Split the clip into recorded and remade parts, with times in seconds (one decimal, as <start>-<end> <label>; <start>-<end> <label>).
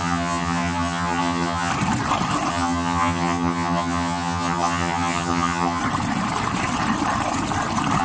0.0-1.7 remade; 1.7-2.5 recorded; 2.5-5.8 remade; 5.8-8.0 recorded